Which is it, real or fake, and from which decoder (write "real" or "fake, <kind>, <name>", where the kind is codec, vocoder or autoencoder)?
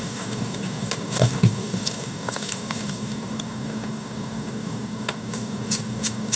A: fake, codec, DAC